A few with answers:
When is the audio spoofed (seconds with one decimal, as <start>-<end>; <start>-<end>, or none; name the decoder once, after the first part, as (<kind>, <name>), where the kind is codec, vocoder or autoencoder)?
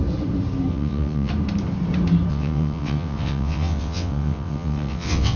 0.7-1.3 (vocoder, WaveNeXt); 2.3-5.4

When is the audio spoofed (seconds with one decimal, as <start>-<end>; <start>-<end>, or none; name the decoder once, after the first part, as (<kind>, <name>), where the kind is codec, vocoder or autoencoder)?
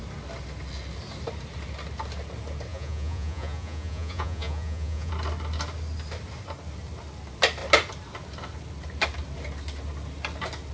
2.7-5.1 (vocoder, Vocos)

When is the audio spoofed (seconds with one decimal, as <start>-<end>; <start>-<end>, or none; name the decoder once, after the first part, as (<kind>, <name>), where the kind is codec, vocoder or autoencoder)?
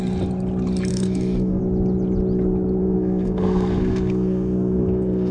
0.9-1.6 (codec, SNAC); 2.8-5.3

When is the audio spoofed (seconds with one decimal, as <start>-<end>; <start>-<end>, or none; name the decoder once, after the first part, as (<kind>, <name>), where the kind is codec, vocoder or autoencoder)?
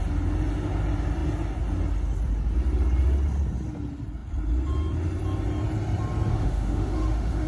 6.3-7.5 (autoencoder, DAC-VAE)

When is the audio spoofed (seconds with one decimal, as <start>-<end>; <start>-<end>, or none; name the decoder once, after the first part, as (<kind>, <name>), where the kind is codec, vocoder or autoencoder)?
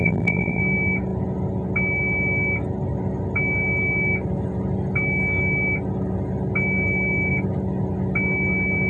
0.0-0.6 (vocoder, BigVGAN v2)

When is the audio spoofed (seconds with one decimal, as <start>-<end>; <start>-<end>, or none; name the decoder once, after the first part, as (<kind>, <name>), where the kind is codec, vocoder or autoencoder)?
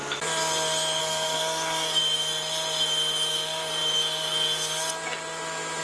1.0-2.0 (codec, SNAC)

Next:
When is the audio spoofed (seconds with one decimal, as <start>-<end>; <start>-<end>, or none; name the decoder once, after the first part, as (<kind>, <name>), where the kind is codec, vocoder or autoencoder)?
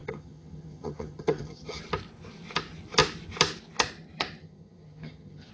0.0-1.8 (vocoder, HiFi-GAN); 4.4-5.5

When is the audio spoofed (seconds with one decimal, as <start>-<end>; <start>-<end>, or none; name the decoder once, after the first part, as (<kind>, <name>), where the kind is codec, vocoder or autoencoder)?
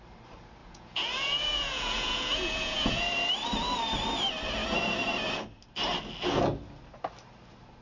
0.6-3.0 (vocoder, Vocos)